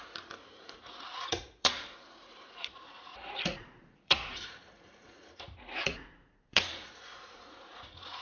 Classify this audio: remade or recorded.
remade